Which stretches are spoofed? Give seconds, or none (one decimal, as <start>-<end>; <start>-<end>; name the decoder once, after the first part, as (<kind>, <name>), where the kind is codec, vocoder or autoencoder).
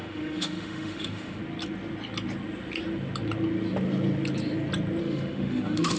0.0-1.4 (autoencoder, DAC-VAE); 5.0-6.0